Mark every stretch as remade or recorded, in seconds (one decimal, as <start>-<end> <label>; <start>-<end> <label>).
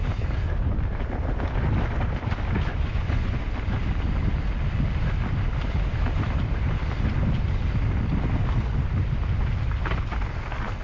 0.0-2.7 recorded; 2.7-3.4 remade; 3.4-10.8 recorded